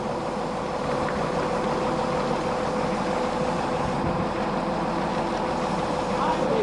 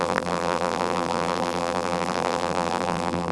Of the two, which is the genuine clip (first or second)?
first